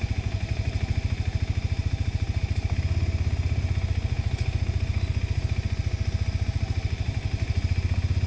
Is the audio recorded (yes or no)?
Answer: yes